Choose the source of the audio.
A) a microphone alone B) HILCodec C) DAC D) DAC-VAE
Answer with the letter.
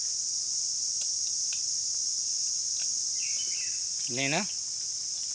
A